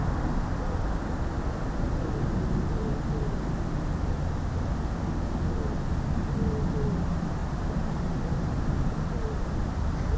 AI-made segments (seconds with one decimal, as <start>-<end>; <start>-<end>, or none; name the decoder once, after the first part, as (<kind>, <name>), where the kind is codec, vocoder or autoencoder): 7.4-10.2 (vocoder, BigVGAN v2)